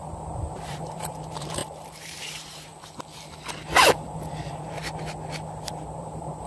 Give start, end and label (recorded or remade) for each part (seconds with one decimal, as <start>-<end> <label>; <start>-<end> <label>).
0.0-2.7 remade; 2.7-6.0 recorded; 6.0-6.5 remade